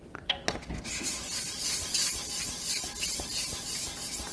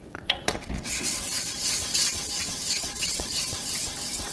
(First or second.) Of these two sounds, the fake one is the second